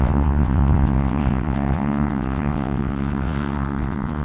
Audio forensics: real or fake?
fake